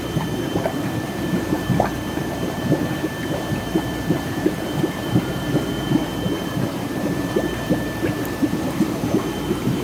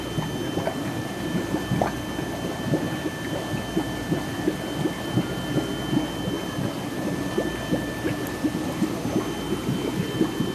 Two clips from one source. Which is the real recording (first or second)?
second